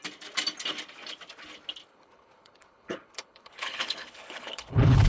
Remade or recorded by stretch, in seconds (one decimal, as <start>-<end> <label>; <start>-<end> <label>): 0.0-1.9 recorded; 1.9-5.1 remade